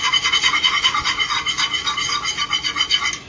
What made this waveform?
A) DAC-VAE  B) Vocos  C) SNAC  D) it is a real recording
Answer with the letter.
D